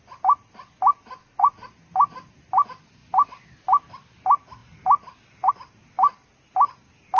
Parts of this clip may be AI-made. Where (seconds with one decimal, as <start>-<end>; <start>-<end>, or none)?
1.2-1.7